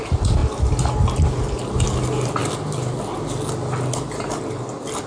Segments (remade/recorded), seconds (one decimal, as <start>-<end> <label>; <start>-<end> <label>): 0.0-5.1 recorded